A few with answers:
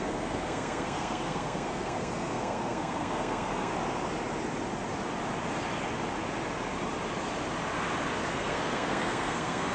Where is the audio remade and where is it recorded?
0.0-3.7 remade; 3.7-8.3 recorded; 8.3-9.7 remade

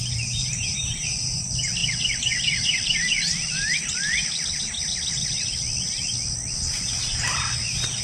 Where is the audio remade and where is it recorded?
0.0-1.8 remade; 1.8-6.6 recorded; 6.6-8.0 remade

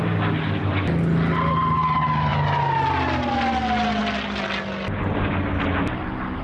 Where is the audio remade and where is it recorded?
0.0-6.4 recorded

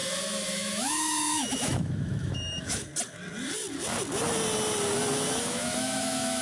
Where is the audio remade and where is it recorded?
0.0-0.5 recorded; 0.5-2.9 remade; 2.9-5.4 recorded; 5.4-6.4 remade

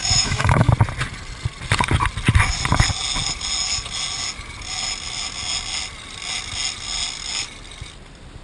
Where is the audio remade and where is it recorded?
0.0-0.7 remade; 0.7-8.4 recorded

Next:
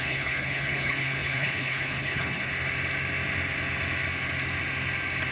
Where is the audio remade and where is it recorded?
0.0-2.5 remade; 2.5-5.3 recorded

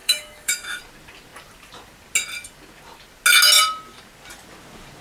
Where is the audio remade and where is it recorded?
0.0-0.8 remade; 0.8-5.0 recorded

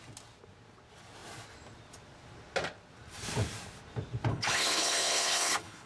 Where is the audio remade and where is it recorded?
0.0-4.3 recorded; 4.3-5.9 remade